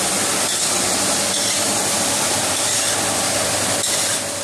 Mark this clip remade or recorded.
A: remade